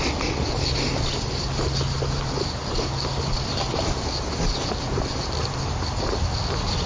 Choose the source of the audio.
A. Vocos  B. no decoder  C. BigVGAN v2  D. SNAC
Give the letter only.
B